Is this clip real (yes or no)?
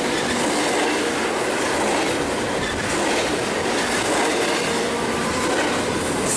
yes